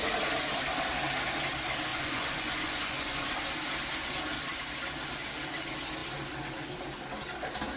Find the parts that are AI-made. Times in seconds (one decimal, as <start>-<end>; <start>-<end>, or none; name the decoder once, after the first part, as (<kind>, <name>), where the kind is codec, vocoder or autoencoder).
1.9-3.3 (vocoder, Vocos)